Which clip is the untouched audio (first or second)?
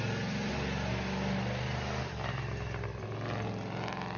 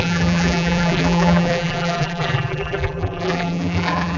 first